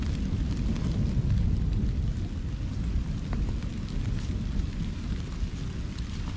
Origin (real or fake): real